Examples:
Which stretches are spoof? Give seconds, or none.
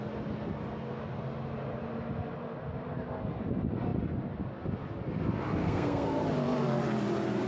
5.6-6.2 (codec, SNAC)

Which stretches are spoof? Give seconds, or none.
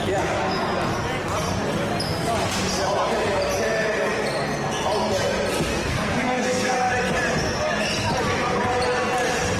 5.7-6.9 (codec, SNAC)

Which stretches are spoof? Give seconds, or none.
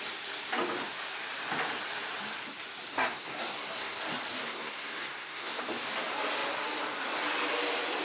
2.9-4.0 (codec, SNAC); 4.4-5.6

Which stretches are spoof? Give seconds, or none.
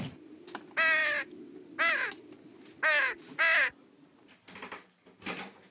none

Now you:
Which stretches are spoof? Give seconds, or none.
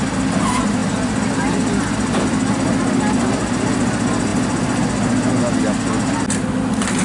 none